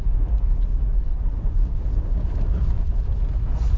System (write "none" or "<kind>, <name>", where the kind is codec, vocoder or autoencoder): none